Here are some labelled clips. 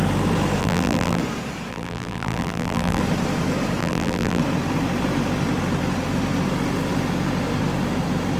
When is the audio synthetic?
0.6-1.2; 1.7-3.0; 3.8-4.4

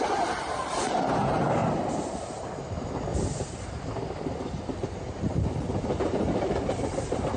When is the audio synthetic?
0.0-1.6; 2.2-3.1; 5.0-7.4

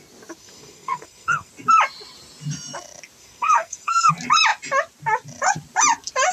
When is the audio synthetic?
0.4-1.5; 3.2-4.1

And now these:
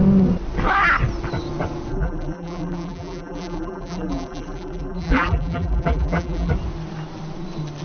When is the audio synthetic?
1.9-6.5

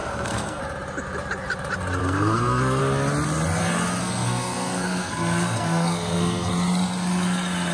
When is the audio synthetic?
0.0-0.6; 2.0-2.8; 4.0-6.5

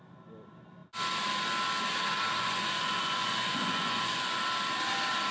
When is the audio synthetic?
2.3-4.4

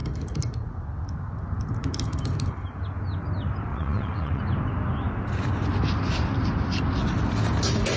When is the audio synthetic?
3.7-4.4